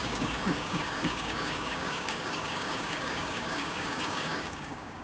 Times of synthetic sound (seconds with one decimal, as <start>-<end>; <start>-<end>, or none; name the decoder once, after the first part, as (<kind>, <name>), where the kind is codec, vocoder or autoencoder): 0.0-5.0 (codec, DAC)